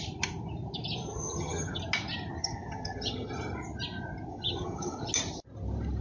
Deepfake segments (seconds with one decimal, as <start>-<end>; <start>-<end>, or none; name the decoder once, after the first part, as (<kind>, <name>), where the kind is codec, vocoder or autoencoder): 1.1-1.8 (vocoder, HiFi-GAN); 2.4-3.3; 4.3-5.1